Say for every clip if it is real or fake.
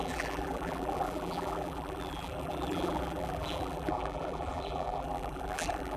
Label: fake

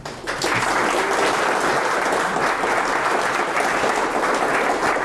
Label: real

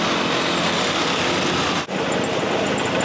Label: real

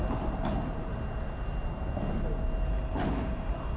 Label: real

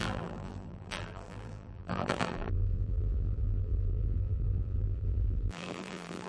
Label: fake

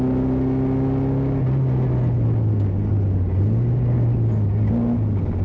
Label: real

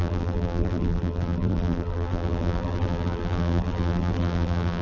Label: fake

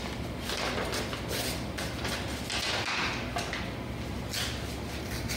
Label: real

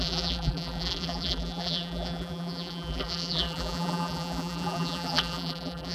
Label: fake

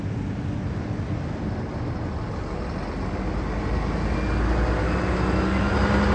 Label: real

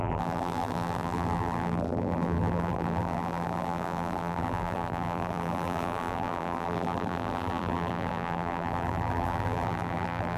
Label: fake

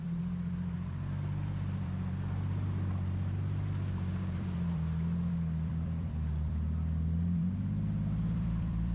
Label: fake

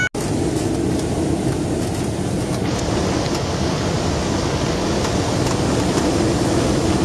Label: real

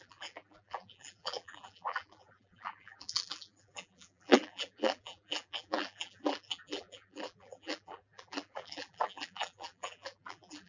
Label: fake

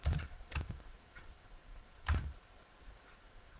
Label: fake